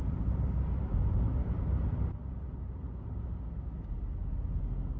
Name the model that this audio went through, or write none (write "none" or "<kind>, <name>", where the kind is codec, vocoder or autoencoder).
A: none